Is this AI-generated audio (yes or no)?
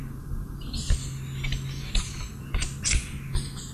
no